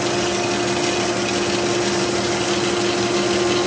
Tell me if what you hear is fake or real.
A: real